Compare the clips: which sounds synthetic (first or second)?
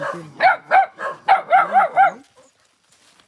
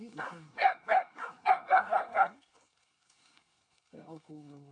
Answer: second